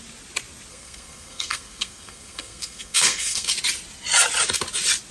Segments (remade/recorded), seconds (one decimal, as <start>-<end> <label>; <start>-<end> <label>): 0.0-0.7 recorded; 0.7-3.5 remade; 3.5-5.1 recorded